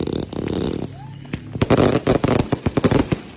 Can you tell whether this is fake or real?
real